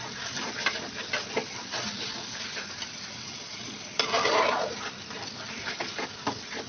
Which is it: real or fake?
real